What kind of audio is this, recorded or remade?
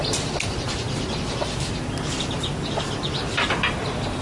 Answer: recorded